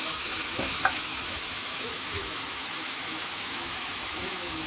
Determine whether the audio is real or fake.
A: fake